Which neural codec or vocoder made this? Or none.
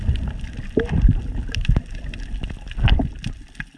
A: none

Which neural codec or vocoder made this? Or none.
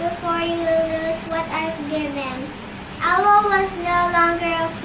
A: none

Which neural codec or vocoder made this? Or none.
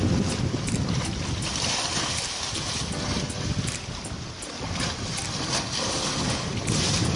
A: none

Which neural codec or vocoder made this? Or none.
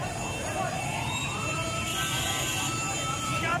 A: vocoder, BigVGAN v2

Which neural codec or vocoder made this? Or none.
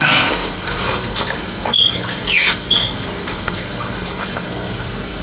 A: codec, SNAC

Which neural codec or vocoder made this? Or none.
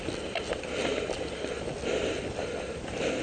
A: vocoder, BigVGAN v2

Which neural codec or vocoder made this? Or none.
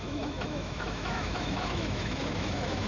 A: autoencoder, DAC-VAE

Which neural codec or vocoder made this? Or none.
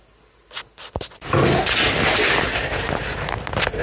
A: none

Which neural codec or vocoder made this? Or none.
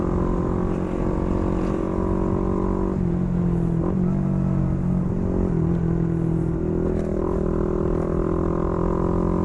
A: none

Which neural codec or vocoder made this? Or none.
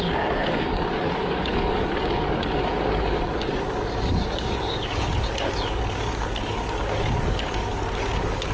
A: codec, DAC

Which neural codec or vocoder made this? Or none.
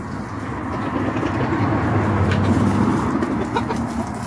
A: none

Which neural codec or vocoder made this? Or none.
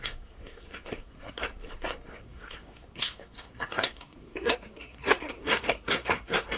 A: codec, SNAC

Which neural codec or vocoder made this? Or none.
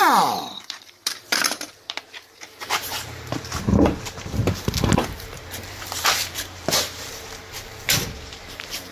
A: vocoder, BigVGAN v2